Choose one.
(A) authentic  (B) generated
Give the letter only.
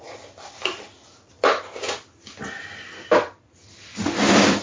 A